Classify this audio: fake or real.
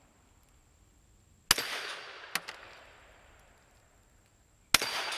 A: real